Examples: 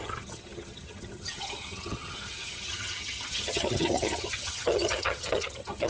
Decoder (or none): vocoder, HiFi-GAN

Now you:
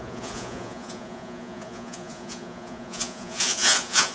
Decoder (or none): vocoder, Vocos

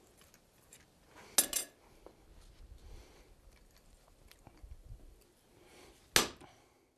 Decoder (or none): none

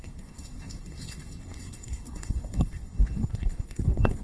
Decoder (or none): codec, SNAC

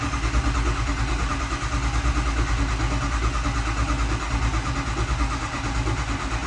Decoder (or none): none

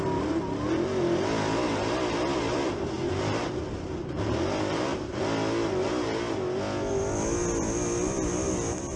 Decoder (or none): none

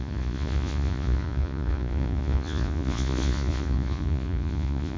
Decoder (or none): vocoder, Vocos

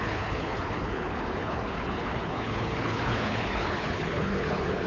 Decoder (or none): codec, HILCodec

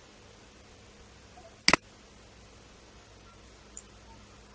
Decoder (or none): none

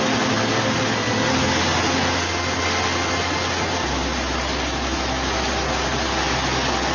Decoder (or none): none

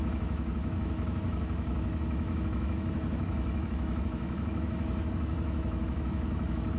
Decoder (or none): autoencoder, DAC-VAE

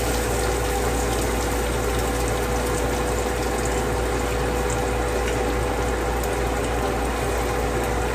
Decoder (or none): none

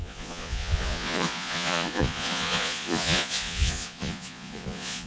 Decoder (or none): vocoder, Vocos